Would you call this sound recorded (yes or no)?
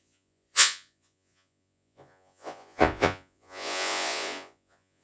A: no